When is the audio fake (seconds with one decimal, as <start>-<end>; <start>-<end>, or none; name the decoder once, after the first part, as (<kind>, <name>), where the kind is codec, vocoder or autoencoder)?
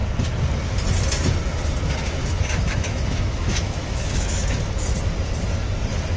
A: 2.2-4.7 (autoencoder, DAC-VAE)